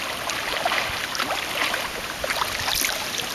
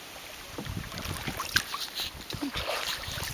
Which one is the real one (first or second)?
first